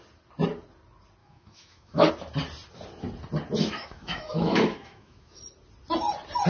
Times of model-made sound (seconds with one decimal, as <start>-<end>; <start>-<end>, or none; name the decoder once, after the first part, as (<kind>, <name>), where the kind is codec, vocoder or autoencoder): 1.2-2.1 (autoencoder, DAC-VAE); 3.6-5.4